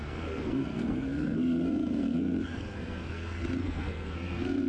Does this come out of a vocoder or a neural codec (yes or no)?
yes